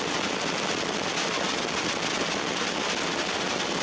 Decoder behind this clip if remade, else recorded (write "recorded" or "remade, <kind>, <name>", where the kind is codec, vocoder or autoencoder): recorded